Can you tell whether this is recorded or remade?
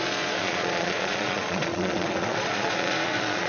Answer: remade